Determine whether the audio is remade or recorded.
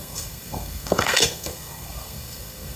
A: remade